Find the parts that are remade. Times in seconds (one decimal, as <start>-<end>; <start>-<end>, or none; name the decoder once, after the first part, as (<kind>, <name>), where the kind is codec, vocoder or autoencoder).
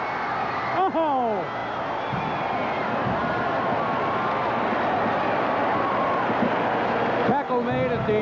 none